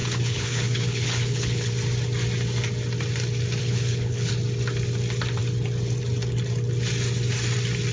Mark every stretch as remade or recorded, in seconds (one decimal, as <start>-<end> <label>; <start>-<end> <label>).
0.0-1.7 remade; 1.7-3.6 recorded; 3.6-4.3 remade; 4.3-7.9 recorded